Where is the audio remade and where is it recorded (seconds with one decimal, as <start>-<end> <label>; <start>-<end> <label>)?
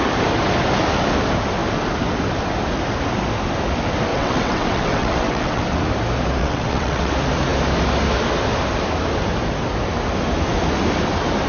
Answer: 0.0-4.1 recorded; 4.1-5.6 remade; 5.6-6.4 recorded; 6.4-7.1 remade; 7.1-11.5 recorded